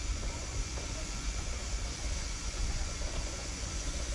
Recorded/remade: remade